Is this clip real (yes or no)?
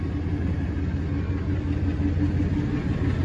yes